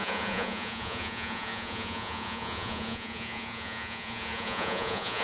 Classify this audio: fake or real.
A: fake